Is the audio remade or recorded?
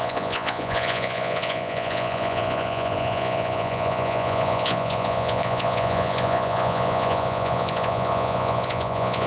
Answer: remade